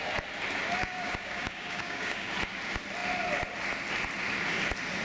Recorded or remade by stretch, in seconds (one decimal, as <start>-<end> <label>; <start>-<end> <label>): 0.0-0.8 recorded; 0.8-2.3 remade; 2.3-5.0 recorded